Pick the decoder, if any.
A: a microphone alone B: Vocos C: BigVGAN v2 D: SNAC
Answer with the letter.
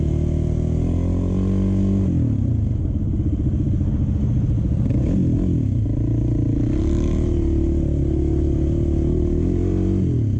A